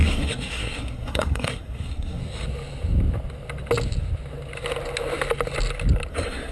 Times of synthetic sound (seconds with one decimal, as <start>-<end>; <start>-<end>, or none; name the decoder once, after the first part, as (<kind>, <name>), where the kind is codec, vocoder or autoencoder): 0.0-2.2 (codec, SNAC); 6.1-6.5